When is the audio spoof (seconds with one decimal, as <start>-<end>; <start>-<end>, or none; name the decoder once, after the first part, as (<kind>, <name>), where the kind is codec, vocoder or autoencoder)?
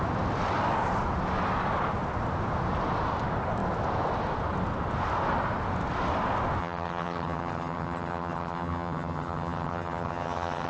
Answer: 6.6-10.7 (vocoder, HiFi-GAN)